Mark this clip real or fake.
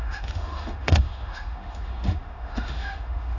fake